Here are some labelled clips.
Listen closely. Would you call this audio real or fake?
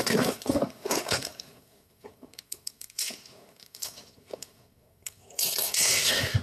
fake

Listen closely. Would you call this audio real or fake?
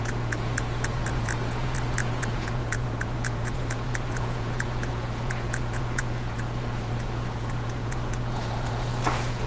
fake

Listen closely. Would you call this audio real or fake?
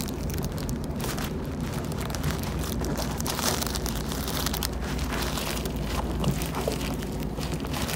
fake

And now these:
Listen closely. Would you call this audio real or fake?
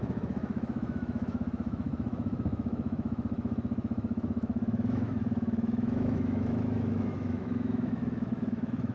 fake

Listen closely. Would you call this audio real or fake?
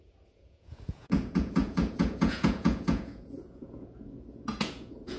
fake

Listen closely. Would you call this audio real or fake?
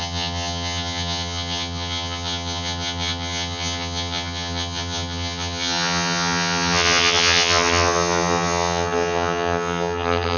fake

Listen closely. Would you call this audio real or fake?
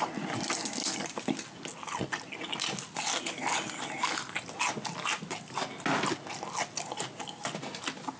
real